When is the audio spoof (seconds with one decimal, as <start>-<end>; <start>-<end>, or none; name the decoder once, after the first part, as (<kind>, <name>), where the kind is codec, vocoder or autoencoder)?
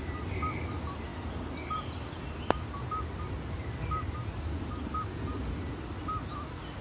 none